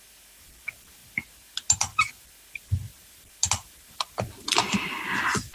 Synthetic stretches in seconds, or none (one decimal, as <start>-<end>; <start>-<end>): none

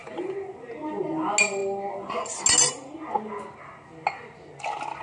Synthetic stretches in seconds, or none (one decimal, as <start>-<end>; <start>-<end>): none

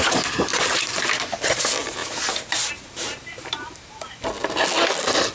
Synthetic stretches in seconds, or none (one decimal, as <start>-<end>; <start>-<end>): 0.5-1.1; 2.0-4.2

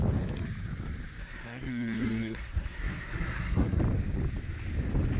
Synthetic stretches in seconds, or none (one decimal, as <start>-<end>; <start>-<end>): 1.2-3.8

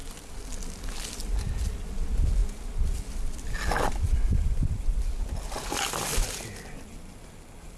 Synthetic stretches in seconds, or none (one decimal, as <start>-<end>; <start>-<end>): none